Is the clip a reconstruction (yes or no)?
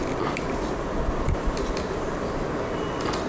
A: no